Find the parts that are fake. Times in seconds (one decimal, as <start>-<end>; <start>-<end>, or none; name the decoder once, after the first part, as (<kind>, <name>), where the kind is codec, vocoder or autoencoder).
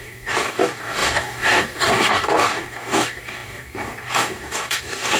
0.0-5.2 (codec, DAC)